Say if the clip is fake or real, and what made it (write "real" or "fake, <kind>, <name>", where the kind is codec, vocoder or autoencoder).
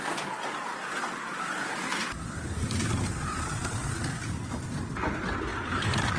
real